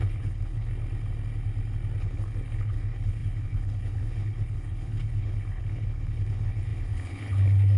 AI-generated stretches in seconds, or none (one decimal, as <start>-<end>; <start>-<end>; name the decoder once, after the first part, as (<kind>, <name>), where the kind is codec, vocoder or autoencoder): 0.0-0.7 (codec, HILCodec); 2.0-7.8